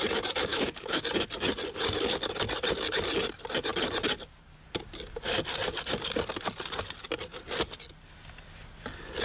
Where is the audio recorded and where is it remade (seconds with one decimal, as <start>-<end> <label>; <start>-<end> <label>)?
0.0-0.5 recorded; 0.5-1.0 remade; 1.0-9.2 recorded